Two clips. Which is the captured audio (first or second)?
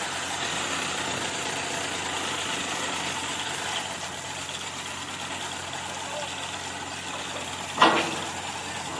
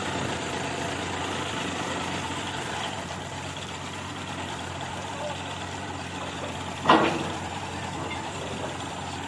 first